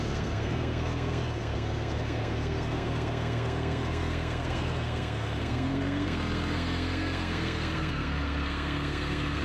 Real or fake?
fake